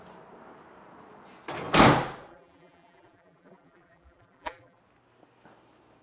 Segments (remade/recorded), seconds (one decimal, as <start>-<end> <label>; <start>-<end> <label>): 0.0-2.3 recorded; 2.3-4.8 remade; 4.8-6.0 recorded